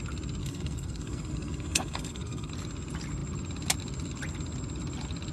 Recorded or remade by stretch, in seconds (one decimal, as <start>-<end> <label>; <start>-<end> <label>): 0.0-0.4 recorded; 0.4-2.5 remade; 2.5-5.3 recorded